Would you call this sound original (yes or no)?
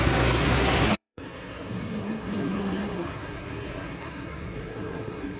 no